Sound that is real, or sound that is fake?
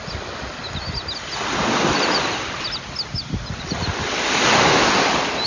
real